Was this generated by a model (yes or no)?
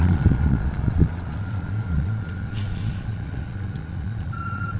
yes